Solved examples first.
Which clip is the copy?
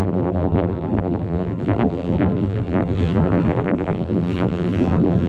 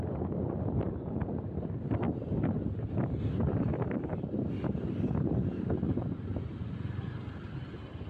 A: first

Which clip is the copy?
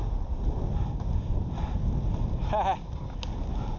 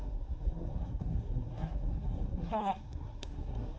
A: second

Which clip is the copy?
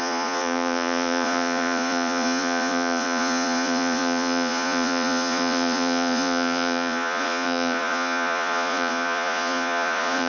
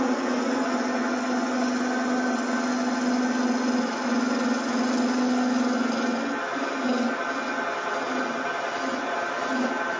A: first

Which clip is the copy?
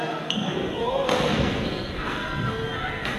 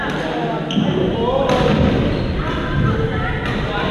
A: first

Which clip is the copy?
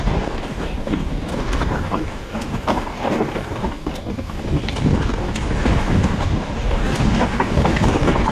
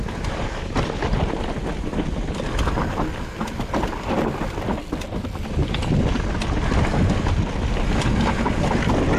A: first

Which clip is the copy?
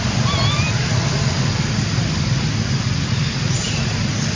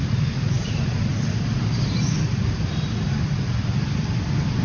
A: second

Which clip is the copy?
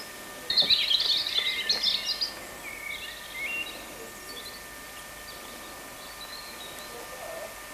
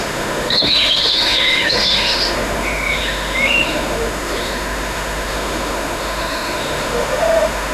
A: second